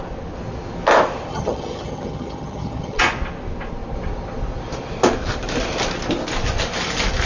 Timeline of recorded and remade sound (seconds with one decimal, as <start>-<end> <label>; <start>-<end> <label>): 0.0-1.3 recorded; 1.3-3.0 remade; 3.0-7.3 recorded